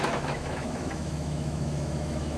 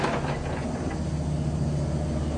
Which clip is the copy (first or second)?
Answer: first